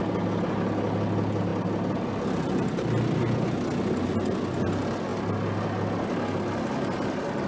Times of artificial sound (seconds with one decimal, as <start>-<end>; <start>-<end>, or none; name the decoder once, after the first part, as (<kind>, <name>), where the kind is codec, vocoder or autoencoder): none